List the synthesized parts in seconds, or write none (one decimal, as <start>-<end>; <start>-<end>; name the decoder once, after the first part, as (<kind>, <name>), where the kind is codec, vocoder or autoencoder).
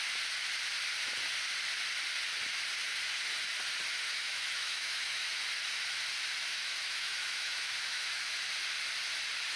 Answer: 3.9-5.3 (autoencoder, DAC-VAE); 6.5-8.4